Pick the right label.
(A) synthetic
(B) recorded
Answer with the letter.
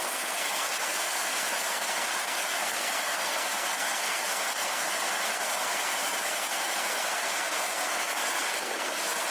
A